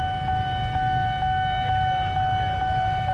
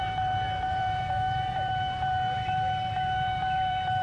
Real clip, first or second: first